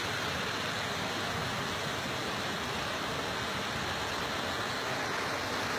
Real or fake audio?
real